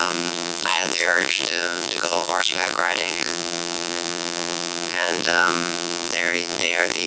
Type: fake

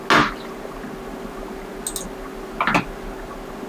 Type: real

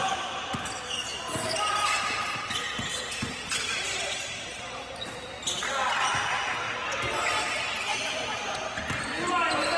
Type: real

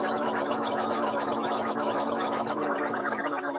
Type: fake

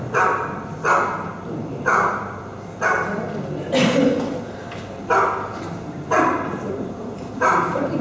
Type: fake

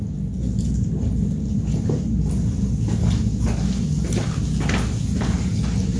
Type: real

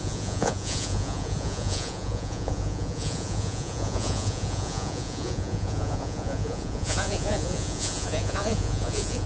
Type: fake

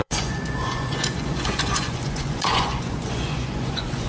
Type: fake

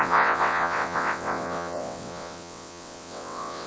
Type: fake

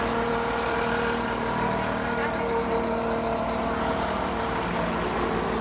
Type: real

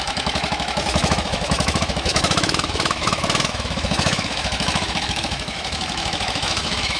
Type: fake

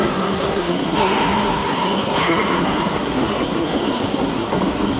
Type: fake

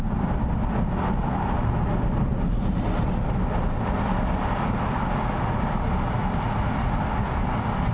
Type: real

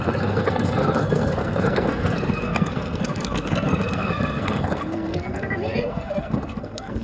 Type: fake